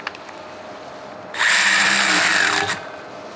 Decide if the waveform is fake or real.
real